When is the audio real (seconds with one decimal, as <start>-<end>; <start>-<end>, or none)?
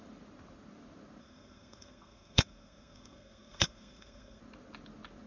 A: 0.0-1.2; 4.4-5.3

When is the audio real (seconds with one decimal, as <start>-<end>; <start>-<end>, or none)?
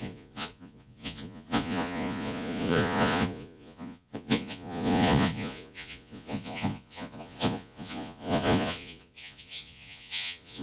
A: none